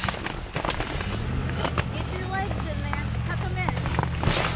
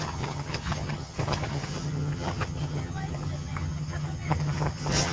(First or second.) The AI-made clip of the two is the second